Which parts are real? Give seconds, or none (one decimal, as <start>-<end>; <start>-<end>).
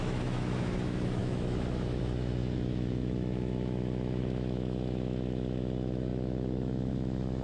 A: none